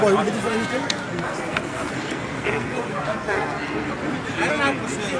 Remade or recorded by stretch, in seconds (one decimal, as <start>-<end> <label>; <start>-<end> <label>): 0.0-0.8 recorded; 0.8-3.9 remade; 3.9-5.2 recorded